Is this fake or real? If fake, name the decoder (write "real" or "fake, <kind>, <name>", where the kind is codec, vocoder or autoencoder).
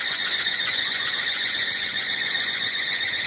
fake, vocoder, Vocos